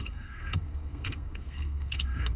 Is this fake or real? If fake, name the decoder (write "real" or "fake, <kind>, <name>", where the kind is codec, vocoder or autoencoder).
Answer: fake, codec, SNAC